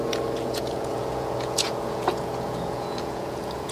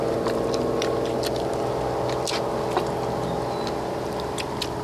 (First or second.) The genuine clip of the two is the second